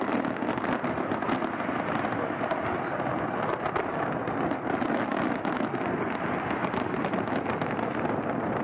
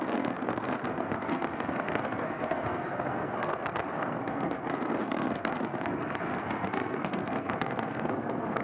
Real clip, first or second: first